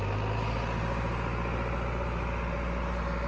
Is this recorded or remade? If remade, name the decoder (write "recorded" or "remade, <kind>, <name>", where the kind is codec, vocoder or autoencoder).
recorded